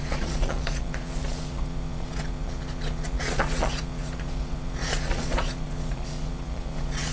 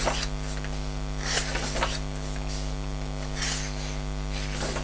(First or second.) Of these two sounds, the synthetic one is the first